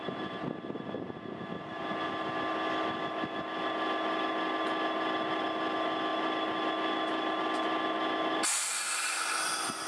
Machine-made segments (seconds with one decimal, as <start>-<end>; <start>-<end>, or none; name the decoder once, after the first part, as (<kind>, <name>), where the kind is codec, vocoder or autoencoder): none